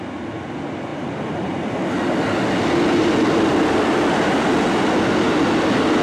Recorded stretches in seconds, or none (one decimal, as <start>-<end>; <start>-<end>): 0.0-3.0; 3.9-6.0